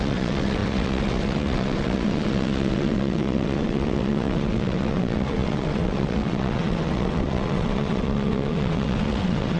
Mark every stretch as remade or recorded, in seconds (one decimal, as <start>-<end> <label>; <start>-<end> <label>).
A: 0.0-9.6 remade